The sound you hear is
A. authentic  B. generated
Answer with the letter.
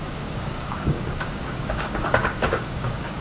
B